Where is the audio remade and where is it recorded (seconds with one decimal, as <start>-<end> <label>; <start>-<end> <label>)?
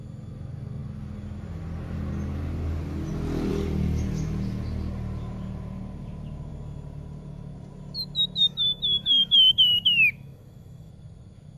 0.0-8.4 recorded; 8.4-10.9 remade; 10.9-11.6 recorded